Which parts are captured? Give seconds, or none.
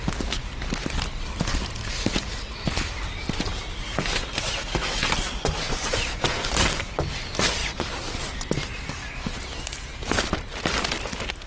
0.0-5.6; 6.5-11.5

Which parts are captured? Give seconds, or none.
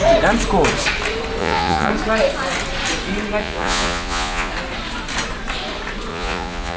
0.0-1.4; 1.9-3.4; 4.5-6.1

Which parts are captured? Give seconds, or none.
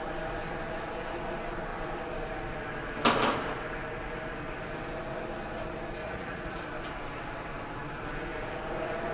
0.0-6.0; 6.6-9.1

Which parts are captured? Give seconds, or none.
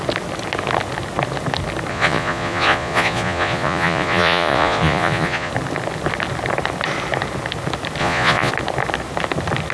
0.0-1.9; 5.5-8.0; 8.5-9.7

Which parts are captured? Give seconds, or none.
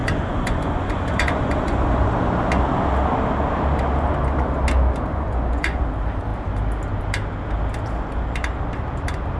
2.1-5.1; 5.8-9.4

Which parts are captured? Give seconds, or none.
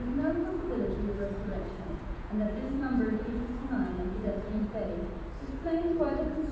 0.0-1.5; 4.6-6.5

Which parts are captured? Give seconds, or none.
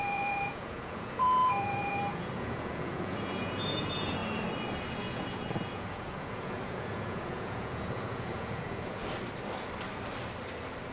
4.2-5.0; 9.0-10.9